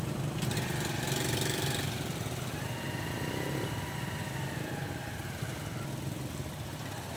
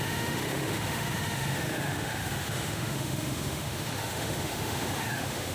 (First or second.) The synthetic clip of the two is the second